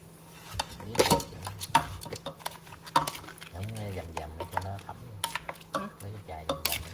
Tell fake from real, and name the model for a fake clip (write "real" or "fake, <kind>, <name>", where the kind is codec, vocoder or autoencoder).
real